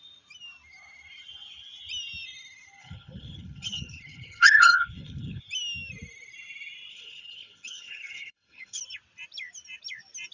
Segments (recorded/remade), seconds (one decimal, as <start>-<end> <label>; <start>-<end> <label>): 0.0-2.8 recorded; 2.8-5.4 remade; 5.4-6.9 recorded; 6.9-8.8 remade; 8.8-10.3 recorded